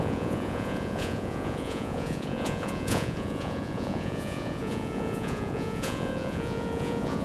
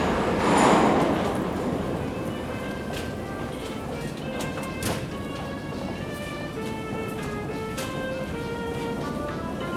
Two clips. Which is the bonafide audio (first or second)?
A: second